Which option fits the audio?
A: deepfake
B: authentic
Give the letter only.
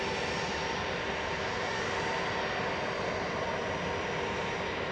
B